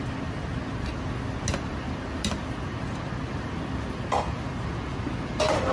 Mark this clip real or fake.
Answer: real